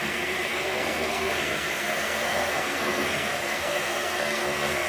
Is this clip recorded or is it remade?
remade